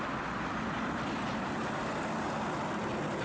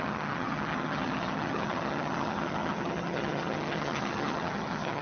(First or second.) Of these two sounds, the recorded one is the first